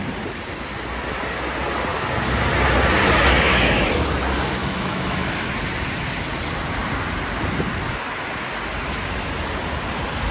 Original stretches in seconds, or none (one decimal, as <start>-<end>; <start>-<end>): 0.0-4.6; 5.5-10.3